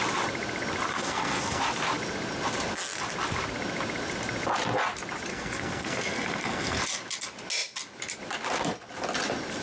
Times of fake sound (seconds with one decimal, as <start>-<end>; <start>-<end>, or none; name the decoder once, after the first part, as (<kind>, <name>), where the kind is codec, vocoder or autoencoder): 0.9-1.6 (codec, SNAC); 5.3-6.8